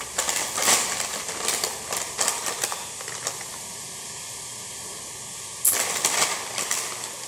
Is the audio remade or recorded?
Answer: recorded